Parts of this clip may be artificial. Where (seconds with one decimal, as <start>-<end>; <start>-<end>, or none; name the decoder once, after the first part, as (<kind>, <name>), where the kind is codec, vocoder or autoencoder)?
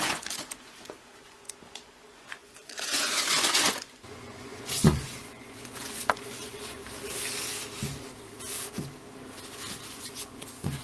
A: 0.0-6.8 (vocoder, Vocos); 9.9-10.8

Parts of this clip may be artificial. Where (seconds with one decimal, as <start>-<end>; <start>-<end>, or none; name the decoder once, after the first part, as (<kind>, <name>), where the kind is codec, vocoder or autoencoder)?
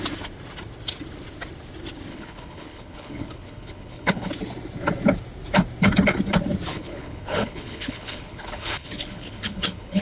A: 2.1-4.3 (codec, HILCodec); 6.7-10.0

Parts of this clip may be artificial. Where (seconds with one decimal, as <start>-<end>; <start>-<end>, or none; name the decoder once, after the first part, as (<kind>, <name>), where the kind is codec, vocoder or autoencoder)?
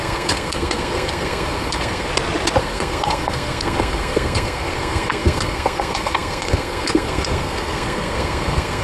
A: 0.0-2.1 (codec, SNAC); 2.6-8.8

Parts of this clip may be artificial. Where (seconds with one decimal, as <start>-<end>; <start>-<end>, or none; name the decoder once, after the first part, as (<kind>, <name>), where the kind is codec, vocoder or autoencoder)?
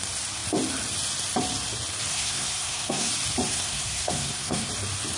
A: 2.1-3.1 (codec, SNAC); 3.5-4.7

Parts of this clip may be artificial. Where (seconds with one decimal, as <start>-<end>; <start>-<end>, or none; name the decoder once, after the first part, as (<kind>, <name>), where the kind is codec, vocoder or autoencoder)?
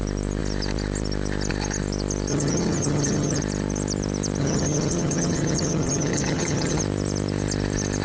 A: 2.3-3.4 (vocoder, HiFi-GAN); 4.4-6.8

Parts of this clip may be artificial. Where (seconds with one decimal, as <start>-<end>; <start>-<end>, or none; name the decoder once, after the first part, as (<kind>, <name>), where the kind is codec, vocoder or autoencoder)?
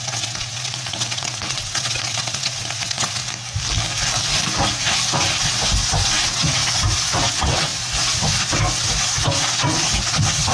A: 0.0-3.2 (vocoder, WaveNeXt); 6.1-6.6; 7.3-7.7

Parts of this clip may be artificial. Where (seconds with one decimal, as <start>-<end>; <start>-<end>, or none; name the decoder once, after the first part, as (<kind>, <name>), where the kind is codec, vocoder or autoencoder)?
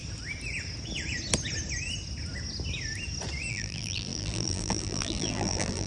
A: 3.5-5.9 (vocoder, BigVGAN v2)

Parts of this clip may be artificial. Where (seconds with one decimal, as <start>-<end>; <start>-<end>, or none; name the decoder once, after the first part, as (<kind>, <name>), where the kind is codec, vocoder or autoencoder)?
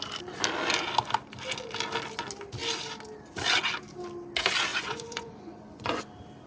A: 4.7-6.0 (vocoder, Vocos)